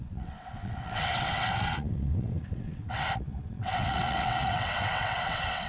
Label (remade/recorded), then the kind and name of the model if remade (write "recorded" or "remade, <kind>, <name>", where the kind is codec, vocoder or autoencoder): remade, vocoder, WaveNeXt